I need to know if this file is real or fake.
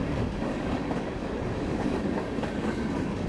fake